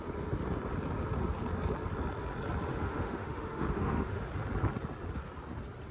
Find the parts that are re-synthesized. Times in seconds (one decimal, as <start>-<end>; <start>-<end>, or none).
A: 2.7-4.3

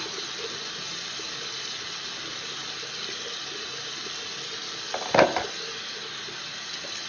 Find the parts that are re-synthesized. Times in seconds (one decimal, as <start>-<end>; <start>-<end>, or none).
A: none

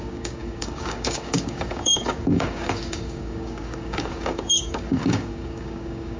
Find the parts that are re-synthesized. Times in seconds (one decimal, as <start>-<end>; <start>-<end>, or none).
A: 0.0-6.2